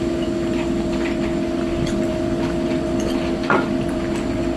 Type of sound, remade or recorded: recorded